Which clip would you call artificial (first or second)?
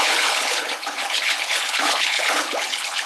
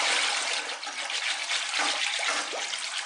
first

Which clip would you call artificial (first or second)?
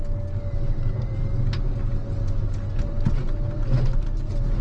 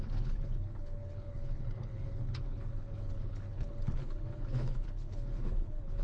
second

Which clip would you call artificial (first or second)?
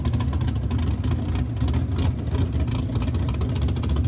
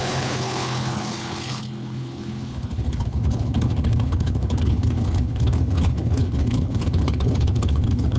second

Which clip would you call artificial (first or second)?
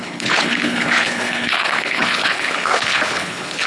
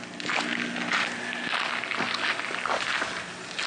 first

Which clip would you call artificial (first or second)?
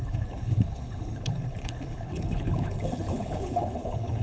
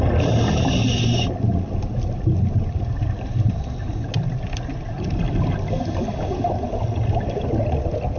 first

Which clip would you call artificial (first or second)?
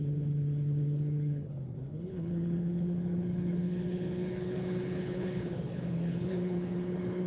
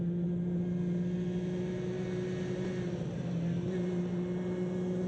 first